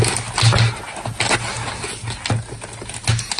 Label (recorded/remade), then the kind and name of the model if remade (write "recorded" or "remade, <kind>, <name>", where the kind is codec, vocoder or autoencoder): recorded